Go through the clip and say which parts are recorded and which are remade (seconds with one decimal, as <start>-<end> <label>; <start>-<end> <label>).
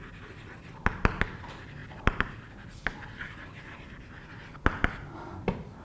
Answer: 0.0-5.8 recorded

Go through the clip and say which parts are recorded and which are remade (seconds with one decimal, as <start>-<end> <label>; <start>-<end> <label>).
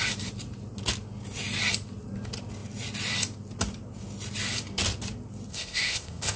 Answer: 0.0-5.5 recorded; 5.5-6.4 remade